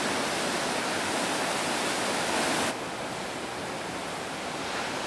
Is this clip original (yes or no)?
yes